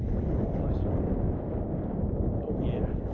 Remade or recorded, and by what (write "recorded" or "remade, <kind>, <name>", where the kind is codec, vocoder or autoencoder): recorded